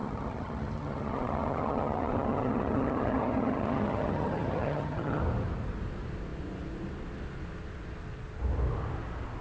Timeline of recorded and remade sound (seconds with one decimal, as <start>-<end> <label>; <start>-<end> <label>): 0.0-5.2 remade; 5.2-9.4 recorded